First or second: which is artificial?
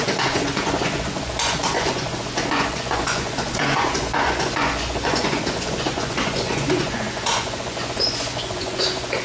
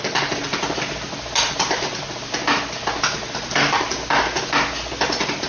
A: first